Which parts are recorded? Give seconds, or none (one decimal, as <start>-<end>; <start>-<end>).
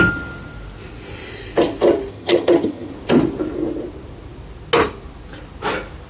0.0-2.1; 2.9-6.1